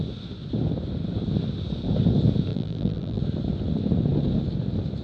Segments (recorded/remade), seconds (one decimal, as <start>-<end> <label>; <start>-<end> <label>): 0.0-2.5 recorded; 2.5-3.2 remade; 3.2-5.0 recorded